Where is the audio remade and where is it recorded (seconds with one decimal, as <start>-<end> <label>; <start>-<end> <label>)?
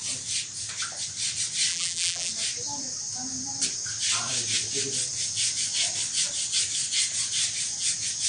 0.0-1.7 recorded; 1.7-2.3 remade; 2.3-8.3 recorded